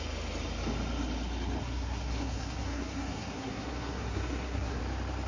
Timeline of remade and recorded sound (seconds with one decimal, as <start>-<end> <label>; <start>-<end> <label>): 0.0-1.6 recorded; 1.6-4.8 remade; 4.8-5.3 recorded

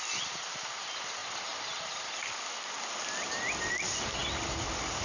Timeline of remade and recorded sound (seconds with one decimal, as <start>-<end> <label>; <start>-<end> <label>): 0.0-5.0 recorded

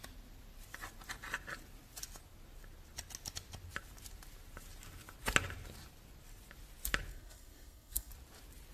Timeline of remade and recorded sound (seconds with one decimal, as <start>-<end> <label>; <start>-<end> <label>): 0.0-7.1 recorded; 7.1-8.1 remade; 8.1-8.7 recorded

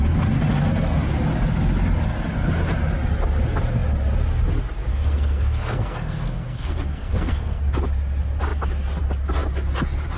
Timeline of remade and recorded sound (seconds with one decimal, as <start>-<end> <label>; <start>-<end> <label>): 0.0-4.9 recorded; 4.9-7.6 remade; 7.6-10.2 recorded

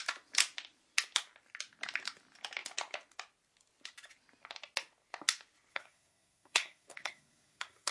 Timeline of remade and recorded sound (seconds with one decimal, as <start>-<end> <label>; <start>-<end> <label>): 0.0-5.7 recorded; 5.7-7.9 remade

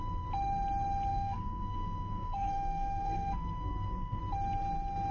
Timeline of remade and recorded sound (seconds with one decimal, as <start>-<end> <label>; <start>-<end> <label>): 0.0-1.1 recorded; 1.1-4.2 remade; 4.2-5.1 recorded